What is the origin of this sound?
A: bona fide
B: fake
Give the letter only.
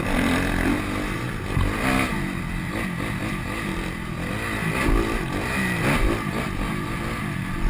A